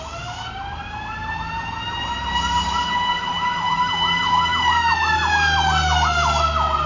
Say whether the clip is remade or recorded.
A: recorded